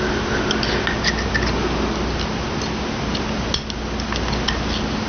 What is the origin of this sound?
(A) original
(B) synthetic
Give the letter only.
A